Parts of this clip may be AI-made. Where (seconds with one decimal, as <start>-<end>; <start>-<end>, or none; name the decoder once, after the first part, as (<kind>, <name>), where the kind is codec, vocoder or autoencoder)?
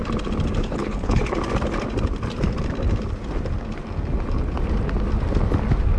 0.6-1.2 (codec, HILCodec)